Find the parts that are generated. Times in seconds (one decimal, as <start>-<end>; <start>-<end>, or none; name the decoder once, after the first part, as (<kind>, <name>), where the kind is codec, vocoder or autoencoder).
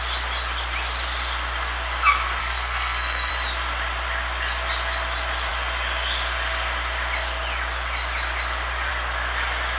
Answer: 2.4-3.3 (codec, SNAC)